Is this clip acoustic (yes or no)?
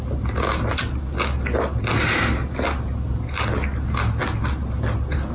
yes